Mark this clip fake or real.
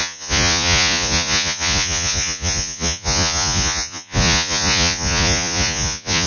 fake